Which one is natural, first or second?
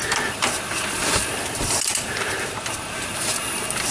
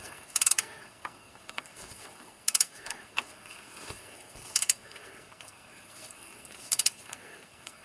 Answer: first